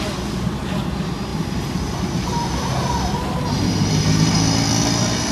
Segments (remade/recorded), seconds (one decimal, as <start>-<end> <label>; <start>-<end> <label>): 0.0-5.3 recorded